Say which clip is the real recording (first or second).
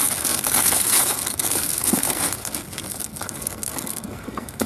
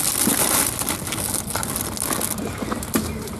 second